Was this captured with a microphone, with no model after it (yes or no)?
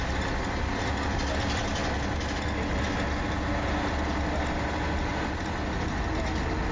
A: yes